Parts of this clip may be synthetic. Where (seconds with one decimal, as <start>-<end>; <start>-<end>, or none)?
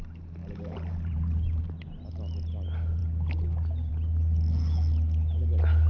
0.4-1.6